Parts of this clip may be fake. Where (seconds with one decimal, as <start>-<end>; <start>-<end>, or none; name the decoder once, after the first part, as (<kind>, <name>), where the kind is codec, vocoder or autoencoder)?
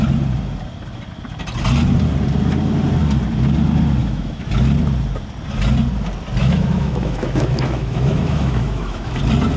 4.0-4.5 (autoencoder, DAC-VAE); 6.4-9.2